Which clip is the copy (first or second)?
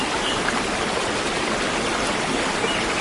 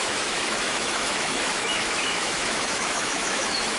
second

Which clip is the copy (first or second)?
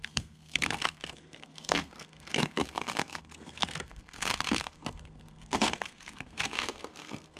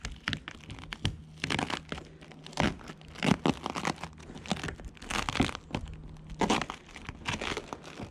first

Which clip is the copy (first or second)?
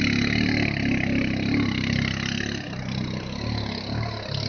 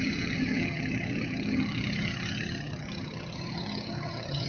second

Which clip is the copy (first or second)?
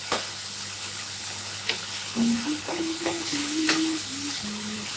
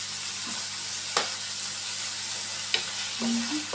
first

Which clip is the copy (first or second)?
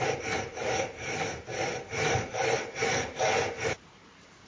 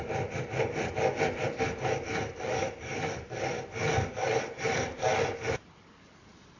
first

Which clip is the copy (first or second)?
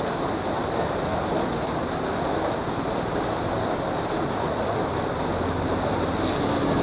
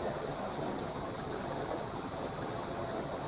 second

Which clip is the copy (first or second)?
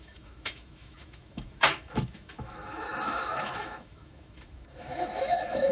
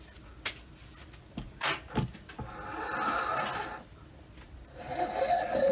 first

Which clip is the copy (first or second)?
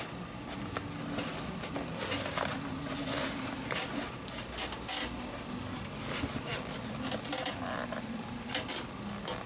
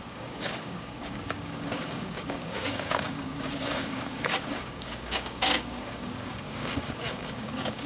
second